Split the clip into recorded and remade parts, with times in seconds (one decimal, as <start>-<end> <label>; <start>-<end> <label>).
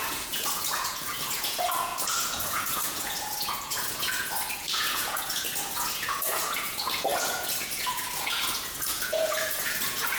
0.0-10.2 remade